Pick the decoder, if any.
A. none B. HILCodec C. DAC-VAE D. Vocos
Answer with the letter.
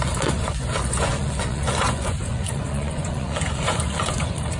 D